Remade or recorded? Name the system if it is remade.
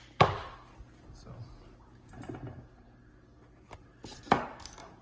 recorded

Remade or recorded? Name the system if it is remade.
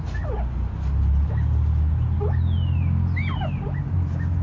recorded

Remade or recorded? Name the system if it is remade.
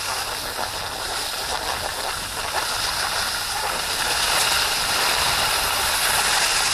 recorded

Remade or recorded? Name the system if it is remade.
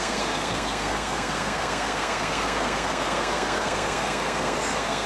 remade, codec, SNAC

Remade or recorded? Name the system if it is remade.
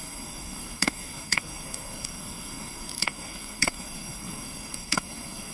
remade, codec, SNAC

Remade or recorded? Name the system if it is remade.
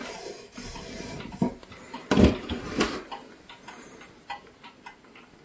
recorded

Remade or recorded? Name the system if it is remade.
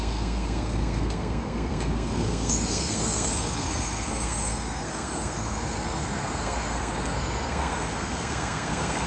remade, codec, SNAC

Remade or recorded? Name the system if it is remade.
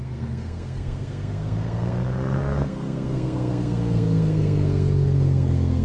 remade, codec, SNAC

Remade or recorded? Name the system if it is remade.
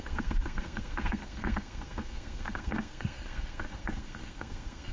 remade, codec, SNAC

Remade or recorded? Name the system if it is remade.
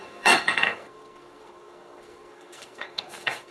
remade, codec, SNAC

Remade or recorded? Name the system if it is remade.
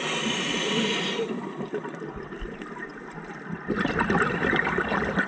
recorded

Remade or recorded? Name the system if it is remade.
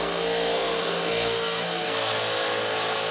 remade, codec, SNAC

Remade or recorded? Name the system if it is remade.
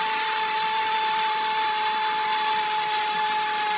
recorded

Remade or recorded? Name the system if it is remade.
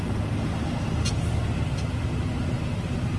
recorded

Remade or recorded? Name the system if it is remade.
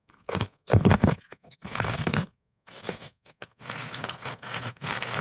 remade, codec, SNAC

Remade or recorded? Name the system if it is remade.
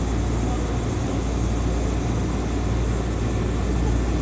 recorded